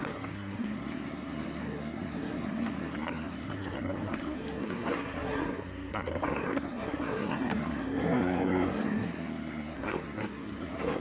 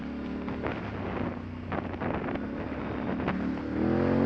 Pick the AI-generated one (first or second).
first